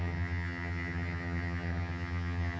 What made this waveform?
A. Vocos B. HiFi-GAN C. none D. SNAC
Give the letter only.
B